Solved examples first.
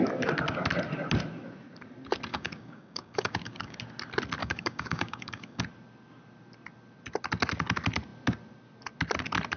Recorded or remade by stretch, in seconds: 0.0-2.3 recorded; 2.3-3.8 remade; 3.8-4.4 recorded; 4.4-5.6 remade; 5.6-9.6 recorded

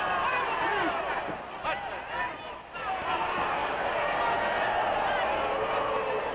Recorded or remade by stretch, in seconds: 0.0-3.6 recorded; 3.6-4.2 remade; 4.2-6.3 recorded

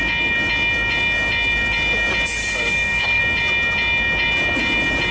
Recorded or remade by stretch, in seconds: 0.0-2.4 recorded; 2.4-3.2 remade; 3.2-5.1 recorded

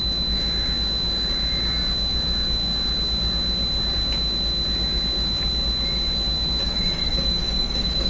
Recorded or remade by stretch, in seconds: 0.0-6.6 recorded; 6.6-8.1 remade